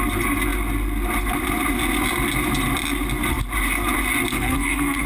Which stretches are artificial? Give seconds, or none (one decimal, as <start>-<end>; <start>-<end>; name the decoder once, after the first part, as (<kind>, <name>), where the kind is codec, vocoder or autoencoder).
4.3-5.1 (codec, SNAC)